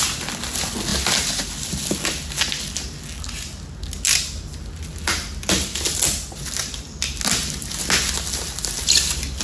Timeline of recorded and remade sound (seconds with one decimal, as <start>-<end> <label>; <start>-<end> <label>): 0.0-9.4 recorded